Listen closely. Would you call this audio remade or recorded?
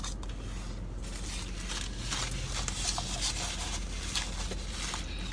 recorded